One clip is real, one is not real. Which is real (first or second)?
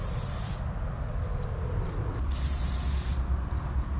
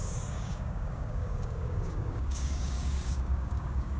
first